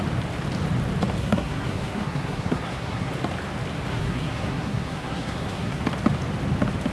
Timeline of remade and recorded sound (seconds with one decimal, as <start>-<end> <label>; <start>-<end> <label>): 0.0-1.2 recorded; 1.2-3.1 remade; 3.1-3.9 recorded; 3.9-5.8 remade; 5.8-6.9 recorded